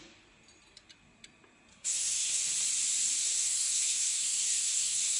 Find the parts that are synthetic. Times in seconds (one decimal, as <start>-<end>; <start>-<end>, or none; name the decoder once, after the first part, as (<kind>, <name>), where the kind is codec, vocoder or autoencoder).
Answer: 1.7-2.5 (codec, SNAC); 3.2-5.2

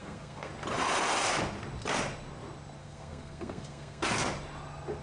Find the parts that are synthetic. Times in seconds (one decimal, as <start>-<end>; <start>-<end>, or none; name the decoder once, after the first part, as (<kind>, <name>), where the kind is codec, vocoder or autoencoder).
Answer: 0.0-0.5 (codec, SNAC); 2.8-4.0